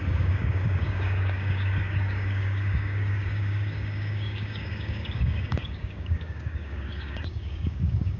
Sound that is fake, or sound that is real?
fake